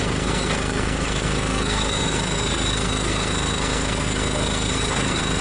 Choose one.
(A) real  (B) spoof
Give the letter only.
B